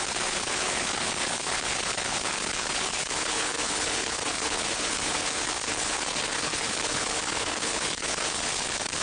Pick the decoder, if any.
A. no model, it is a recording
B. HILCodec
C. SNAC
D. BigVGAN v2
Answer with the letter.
B